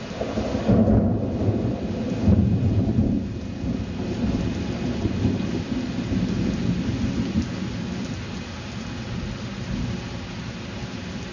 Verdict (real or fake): real